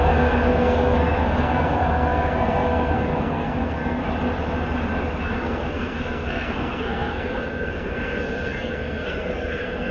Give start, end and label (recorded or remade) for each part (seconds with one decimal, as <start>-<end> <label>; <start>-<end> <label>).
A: 0.0-4.0 remade; 4.0-5.2 recorded; 5.2-9.9 remade